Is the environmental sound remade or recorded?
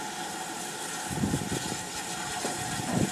recorded